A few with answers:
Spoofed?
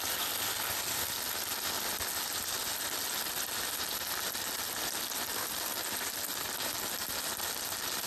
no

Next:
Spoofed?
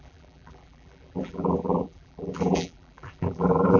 yes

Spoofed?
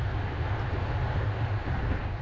no